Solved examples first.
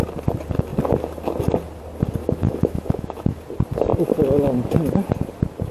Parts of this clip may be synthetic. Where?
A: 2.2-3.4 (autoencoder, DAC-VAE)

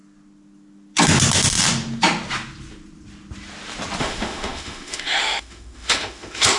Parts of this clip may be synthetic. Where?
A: 4.0-6.6 (autoencoder, DAC-VAE)

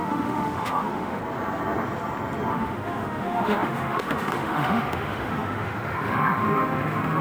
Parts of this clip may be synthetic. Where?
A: 0.0-1.2 (autoencoder, DAC-VAE); 2.5-7.2